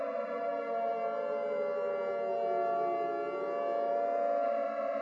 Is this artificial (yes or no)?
no